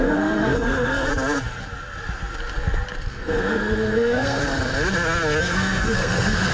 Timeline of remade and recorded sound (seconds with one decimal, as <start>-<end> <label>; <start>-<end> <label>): 0.0-1.1 remade; 1.1-3.1 recorded; 3.1-4.4 remade; 4.4-5.4 recorded; 5.4-6.5 remade